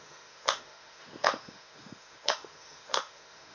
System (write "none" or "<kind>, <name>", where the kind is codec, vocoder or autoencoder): autoencoder, DAC-VAE